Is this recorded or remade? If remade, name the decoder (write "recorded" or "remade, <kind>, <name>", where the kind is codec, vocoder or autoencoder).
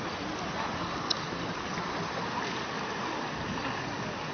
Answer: recorded